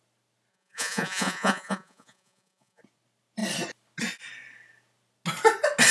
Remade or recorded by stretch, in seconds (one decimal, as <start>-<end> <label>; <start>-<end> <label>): 0.0-0.5 recorded; 0.5-2.8 remade; 2.8-5.9 recorded